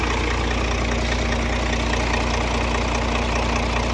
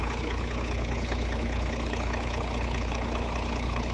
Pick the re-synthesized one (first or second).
second